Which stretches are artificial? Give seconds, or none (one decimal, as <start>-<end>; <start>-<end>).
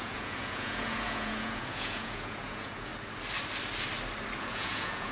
0.0-2.9; 4.4-5.1